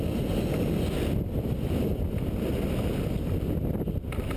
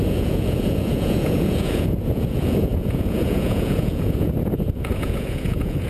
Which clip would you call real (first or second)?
first